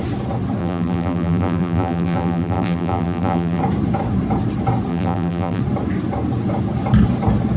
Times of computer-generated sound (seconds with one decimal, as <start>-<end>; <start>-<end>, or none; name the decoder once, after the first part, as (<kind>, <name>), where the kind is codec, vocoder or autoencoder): 0.6-3.6 (vocoder, BigVGAN v2); 4.9-5.6